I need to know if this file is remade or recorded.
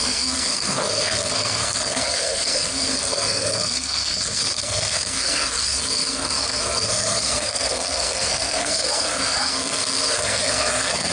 remade